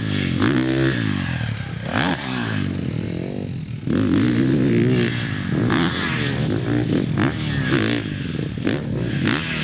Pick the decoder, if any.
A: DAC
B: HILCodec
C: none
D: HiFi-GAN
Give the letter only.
C